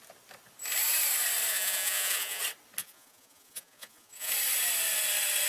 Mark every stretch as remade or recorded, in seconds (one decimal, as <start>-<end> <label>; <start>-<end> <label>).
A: 0.0-1.5 recorded; 1.5-2.4 remade; 2.4-2.8 recorded; 2.8-4.3 remade; 4.3-5.5 recorded